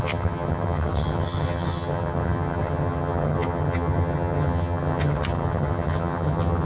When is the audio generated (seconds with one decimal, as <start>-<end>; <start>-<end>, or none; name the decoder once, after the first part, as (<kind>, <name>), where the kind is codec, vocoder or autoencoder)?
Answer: 0.0-6.6 (vocoder, HiFi-GAN)